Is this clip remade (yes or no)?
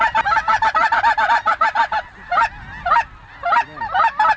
no